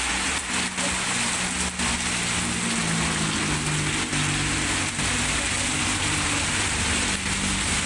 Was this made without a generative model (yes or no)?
yes